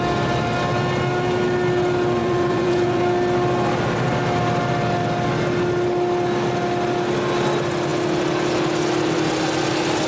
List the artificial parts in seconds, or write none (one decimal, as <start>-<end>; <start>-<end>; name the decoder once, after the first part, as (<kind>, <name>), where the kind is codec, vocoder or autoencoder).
2.2-3.0 (vocoder, Vocos)